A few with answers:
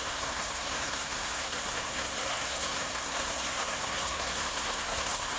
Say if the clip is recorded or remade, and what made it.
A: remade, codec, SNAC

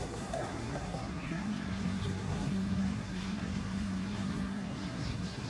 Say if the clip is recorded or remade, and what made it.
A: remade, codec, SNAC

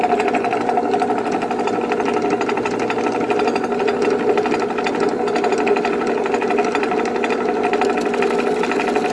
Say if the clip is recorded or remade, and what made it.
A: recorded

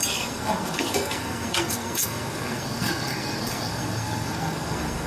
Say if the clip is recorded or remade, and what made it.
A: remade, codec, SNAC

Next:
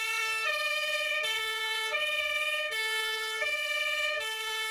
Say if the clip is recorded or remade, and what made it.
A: remade, codec, SNAC